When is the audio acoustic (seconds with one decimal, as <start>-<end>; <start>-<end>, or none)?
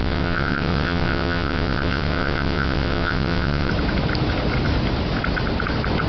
3.7-6.1